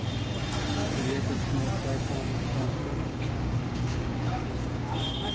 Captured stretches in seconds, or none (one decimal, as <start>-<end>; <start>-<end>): 0.0-0.8; 1.3-1.9

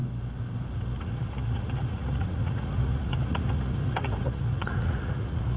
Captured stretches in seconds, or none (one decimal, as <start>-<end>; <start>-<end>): 0.0-1.0

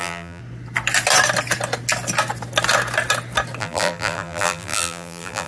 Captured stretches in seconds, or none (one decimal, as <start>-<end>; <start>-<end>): 0.4-3.6

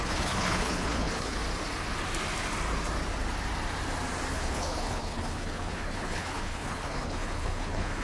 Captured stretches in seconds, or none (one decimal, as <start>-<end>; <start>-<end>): 1.4-4.3

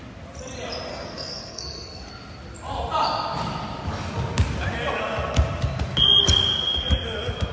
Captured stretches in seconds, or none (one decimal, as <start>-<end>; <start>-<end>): 0.0-0.9; 2.1-7.5

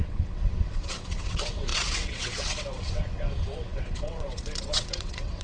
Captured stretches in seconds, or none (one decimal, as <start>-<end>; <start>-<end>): none

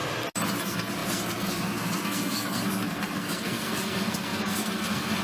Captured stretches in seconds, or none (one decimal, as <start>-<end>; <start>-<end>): 0.0-0.6

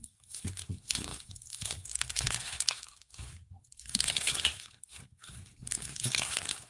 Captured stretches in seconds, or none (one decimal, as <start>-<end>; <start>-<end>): none